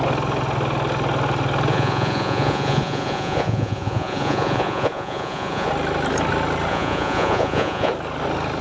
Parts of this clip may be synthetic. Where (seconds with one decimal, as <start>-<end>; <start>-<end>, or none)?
1.7-5.7; 6.7-7.9